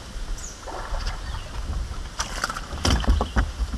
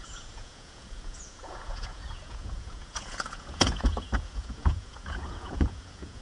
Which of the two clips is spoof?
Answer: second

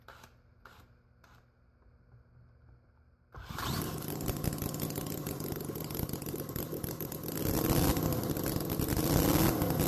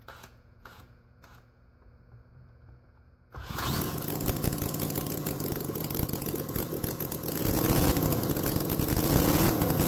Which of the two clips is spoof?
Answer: second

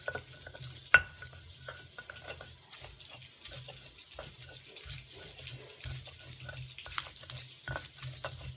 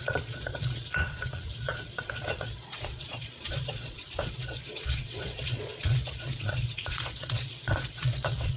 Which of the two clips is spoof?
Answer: second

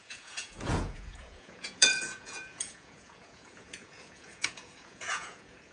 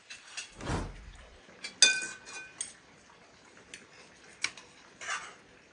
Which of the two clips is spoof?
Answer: first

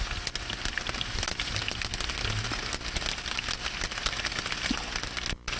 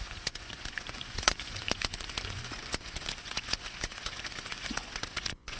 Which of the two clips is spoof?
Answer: second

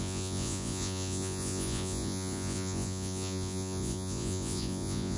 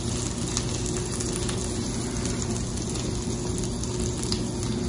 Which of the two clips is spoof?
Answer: first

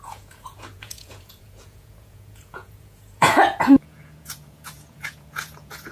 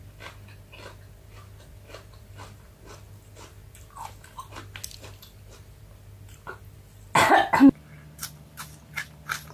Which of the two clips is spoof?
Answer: first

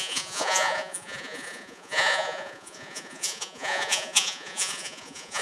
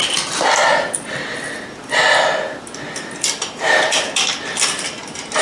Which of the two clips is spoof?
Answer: first